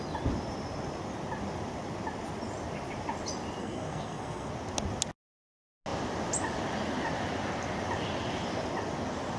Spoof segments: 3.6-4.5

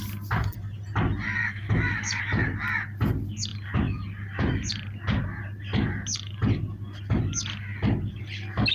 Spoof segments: 1.4-2.2

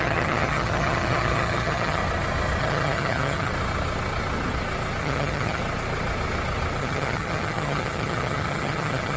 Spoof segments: 0.0-2.0; 2.6-3.5; 5.0-5.6; 6.8-9.2

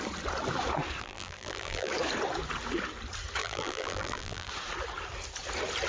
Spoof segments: 1.0-1.9; 3.4-4.5

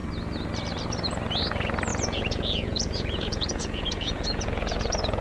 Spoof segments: 1.9-5.2

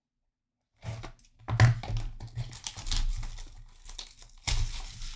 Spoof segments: none

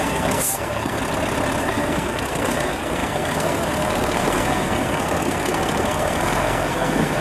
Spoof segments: 0.0-1.0; 1.6-7.2

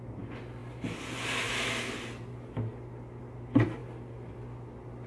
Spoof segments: none